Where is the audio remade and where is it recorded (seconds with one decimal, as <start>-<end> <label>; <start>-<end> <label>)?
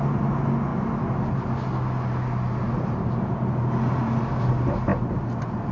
0.0-5.7 recorded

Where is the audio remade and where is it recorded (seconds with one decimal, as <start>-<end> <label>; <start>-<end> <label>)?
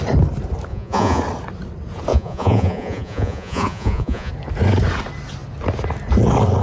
0.0-0.7 recorded; 0.7-1.2 remade; 1.2-2.1 recorded; 2.1-4.3 remade; 4.3-6.6 recorded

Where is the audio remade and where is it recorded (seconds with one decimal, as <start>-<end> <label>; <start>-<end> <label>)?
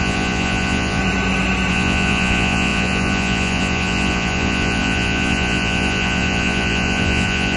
0.0-1.0 remade; 1.0-1.7 recorded; 1.7-7.6 remade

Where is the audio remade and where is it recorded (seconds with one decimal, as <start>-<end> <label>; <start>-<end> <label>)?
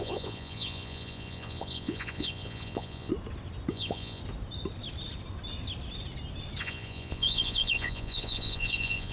0.0-3.1 remade; 3.1-3.7 recorded; 3.7-4.2 remade; 4.2-6.6 recorded; 6.6-9.1 remade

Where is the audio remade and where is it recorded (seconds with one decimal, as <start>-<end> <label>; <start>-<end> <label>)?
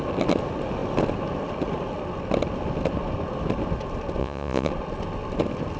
0.0-4.2 recorded; 4.2-4.7 remade; 4.7-5.8 recorded